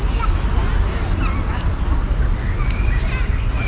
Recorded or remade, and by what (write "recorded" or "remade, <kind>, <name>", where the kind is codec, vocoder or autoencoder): recorded